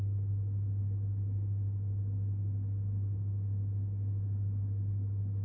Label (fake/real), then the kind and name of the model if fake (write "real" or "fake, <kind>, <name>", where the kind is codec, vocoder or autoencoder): real